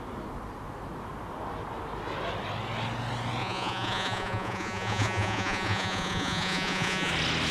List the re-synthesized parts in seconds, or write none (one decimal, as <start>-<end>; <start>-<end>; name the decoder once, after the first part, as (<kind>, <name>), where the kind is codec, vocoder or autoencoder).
3.4-7.1 (vocoder, Vocos)